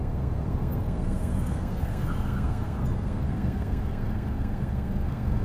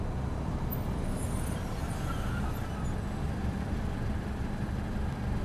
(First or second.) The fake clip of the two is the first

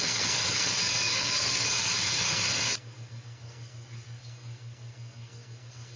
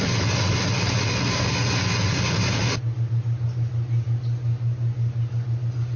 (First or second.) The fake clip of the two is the first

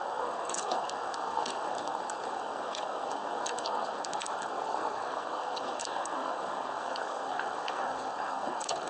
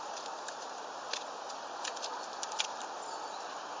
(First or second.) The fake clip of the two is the first